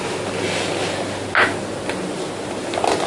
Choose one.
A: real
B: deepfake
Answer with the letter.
A